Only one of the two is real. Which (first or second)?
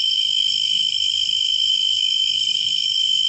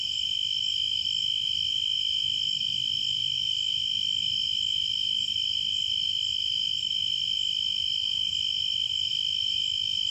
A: second